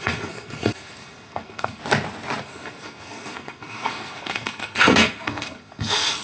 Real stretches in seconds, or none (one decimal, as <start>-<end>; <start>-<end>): 1.8-2.4